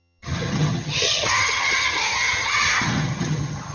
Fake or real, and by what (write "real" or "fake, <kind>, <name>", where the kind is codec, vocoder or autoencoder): fake, vocoder, HiFi-GAN